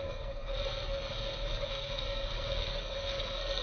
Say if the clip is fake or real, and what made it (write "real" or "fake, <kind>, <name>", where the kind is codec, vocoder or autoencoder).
fake, codec, SNAC